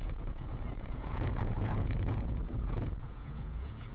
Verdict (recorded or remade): remade